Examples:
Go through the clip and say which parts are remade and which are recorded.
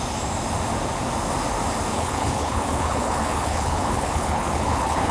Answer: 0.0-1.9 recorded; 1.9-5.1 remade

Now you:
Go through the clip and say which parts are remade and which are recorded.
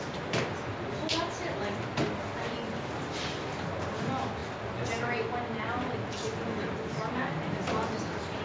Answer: 0.0-8.4 recorded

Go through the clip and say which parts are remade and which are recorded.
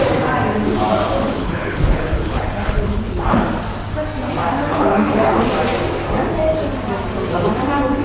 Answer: 0.0-1.2 recorded; 1.2-3.4 remade; 3.4-4.7 recorded; 4.7-5.4 remade; 5.4-8.0 recorded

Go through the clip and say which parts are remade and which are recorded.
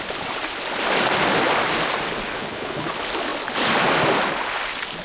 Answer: 0.0-2.3 recorded; 2.3-2.9 remade; 2.9-5.0 recorded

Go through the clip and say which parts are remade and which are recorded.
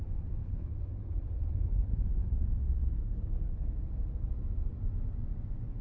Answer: 0.0-0.4 recorded; 0.4-3.9 remade; 3.9-5.8 recorded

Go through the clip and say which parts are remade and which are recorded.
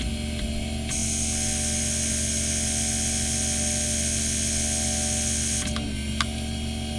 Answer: 0.0-7.0 recorded